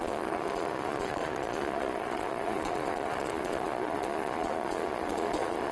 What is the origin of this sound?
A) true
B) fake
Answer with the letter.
B